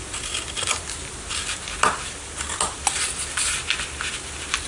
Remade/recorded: recorded